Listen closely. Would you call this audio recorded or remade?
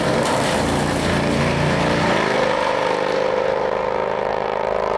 remade